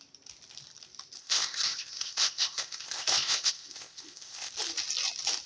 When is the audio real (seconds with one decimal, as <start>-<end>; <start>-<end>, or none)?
0.0-1.2; 4.5-5.5